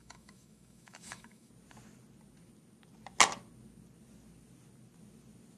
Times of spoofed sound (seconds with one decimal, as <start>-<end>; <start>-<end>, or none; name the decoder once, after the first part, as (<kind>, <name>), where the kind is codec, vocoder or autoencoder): 0.0-1.5 (autoencoder, DAC-VAE)